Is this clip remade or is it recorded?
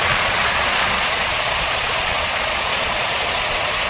remade